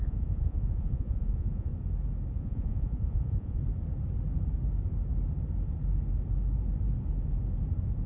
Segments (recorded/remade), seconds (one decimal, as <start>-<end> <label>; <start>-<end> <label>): 0.0-1.7 remade; 1.7-2.4 recorded; 2.4-3.6 remade; 3.6-8.1 recorded